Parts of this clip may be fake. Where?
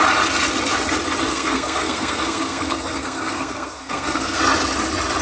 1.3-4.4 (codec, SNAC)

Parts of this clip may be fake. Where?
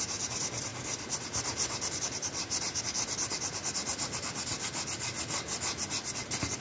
none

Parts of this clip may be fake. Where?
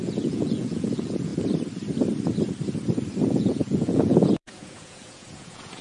0.0-1.3 (vocoder, Vocos); 3.3-5.8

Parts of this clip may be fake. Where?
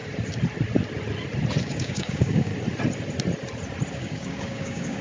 1.6-2.5 (codec, DAC); 3.9-5.0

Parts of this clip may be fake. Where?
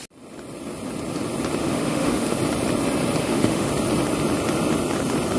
1.6-2.4 (autoencoder, DAC-VAE); 3.2-3.7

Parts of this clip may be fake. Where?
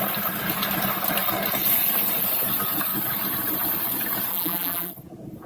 4.3-4.9 (vocoder, BigVGAN v2)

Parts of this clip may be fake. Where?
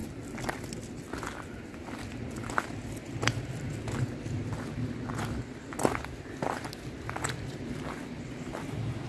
none